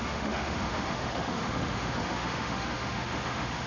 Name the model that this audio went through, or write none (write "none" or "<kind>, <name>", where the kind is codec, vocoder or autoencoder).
autoencoder, DAC-VAE